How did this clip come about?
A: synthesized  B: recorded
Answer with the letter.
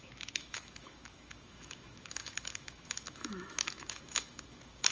A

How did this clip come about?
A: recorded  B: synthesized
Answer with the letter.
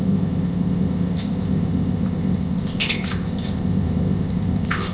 B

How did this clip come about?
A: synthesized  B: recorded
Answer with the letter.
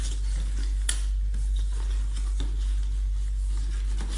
B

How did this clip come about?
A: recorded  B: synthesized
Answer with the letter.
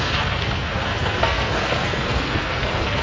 B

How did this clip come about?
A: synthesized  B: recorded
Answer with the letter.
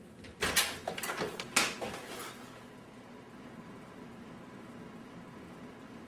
B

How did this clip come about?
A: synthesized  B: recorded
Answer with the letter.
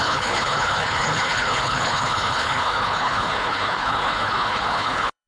A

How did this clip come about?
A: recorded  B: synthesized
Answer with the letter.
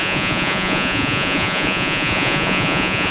B